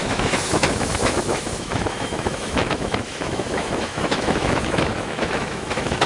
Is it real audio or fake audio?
fake